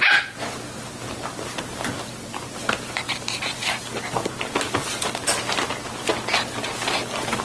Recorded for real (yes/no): yes